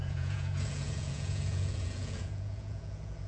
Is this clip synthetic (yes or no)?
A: yes